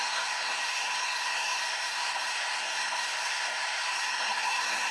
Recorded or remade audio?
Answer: remade